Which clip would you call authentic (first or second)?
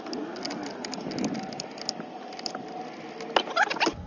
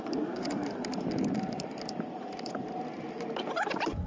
first